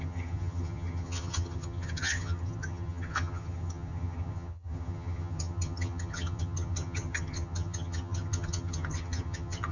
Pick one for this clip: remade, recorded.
remade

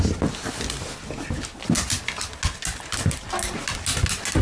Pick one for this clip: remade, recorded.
recorded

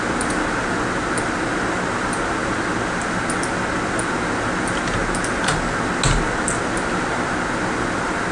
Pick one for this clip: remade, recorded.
recorded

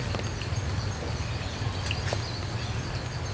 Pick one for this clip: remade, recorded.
recorded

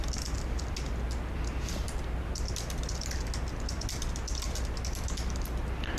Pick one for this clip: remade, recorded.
recorded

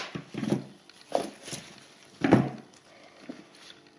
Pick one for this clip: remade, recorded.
recorded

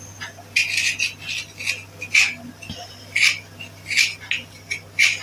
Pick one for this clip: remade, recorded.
recorded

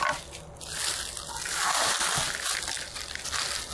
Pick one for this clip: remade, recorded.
recorded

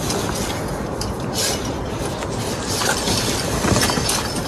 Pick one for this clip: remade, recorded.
recorded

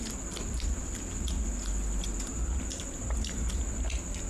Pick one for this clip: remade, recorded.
recorded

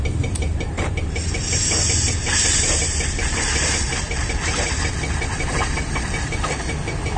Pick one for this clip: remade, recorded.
recorded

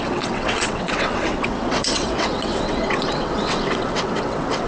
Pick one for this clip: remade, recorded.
remade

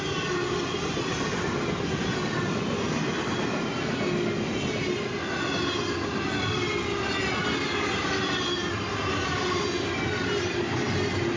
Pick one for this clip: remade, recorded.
recorded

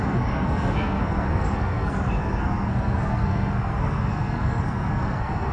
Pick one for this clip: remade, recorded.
remade